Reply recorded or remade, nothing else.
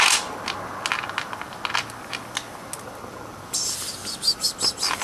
recorded